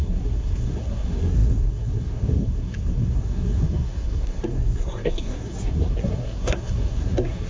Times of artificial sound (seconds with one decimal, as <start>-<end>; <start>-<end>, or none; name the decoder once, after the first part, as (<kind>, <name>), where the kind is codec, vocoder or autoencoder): 0.0-7.5 (codec, SNAC)